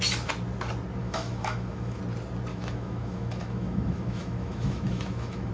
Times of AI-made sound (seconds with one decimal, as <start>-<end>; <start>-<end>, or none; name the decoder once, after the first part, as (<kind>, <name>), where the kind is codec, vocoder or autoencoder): 1.0-2.0 (autoencoder, DAC-VAE); 2.5-5.5